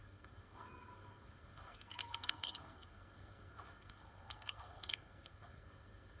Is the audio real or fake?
fake